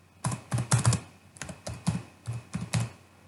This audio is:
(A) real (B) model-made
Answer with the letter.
A